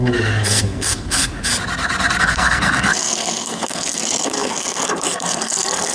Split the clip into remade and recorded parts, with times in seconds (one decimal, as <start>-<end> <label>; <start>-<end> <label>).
0.0-1.5 remade; 1.5-2.2 recorded; 2.2-5.9 remade